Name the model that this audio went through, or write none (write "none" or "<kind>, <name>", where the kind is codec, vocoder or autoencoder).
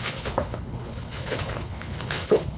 codec, HILCodec